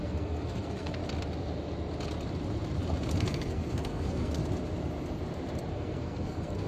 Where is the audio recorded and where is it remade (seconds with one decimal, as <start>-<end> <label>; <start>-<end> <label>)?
0.0-1.0 remade; 1.0-3.2 recorded; 3.2-4.4 remade; 4.4-5.7 recorded; 5.7-6.7 remade